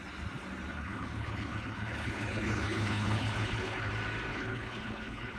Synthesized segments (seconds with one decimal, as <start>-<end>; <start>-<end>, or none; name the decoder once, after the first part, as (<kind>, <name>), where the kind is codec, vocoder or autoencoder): 0.7-3.9 (codec, HILCodec); 4.3-5.4